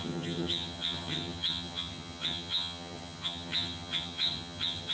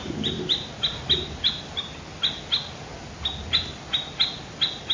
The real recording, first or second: second